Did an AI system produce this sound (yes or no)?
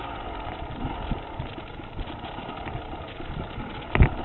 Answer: no